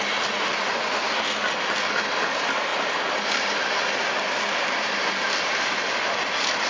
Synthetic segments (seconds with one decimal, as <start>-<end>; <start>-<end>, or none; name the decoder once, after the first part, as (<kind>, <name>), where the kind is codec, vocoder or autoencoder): 2.7-3.5 (vocoder, BigVGAN v2); 4.0-6.0